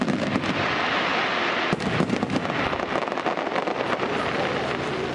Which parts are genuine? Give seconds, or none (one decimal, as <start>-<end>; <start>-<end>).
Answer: 0.0-5.1

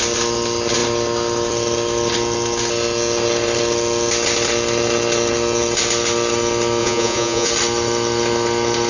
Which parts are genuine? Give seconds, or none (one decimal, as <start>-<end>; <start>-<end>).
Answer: 0.0-6.8; 7.5-8.9

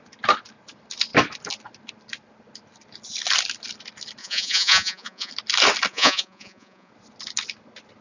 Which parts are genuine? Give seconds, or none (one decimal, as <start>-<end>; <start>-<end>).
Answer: 0.0-4.2; 5.3-5.9; 6.9-8.0